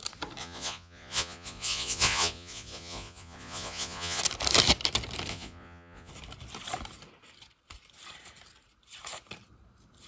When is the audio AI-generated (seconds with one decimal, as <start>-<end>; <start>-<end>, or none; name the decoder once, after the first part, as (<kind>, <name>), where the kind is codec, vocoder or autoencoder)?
0.4-4.2 (vocoder, Vocos); 5.3-6.1

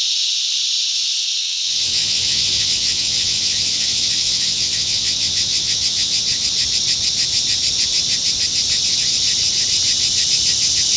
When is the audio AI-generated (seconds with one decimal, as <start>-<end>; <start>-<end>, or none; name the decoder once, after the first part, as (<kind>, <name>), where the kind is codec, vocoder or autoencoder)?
1.4-6.2 (vocoder, WaveNeXt)

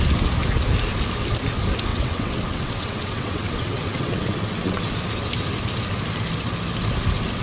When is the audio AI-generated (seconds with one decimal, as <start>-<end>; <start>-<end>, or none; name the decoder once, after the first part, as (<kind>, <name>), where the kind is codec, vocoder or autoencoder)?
1.9-4.9 (vocoder, WaveNeXt)

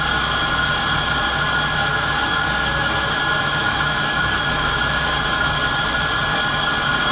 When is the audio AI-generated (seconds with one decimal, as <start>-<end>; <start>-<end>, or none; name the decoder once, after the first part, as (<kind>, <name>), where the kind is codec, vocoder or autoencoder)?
1.9-3.2 (autoencoder, DAC-VAE); 3.6-5.4

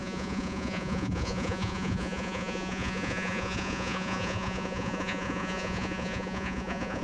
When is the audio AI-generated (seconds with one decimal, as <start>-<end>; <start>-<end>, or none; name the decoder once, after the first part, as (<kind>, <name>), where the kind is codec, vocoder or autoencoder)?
0.0-7.0 (vocoder, Vocos)

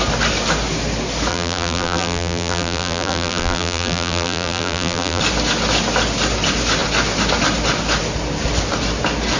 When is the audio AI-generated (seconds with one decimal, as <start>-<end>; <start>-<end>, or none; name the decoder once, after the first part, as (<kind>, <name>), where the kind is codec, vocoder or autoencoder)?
1.3-5.2 (vocoder, BigVGAN v2)

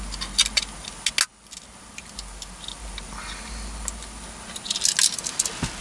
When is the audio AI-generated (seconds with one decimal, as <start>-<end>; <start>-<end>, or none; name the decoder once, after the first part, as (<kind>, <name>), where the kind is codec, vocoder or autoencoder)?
none